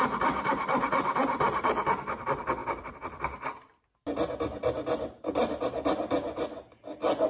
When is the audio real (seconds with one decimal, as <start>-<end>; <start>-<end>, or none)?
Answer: 0.0-7.3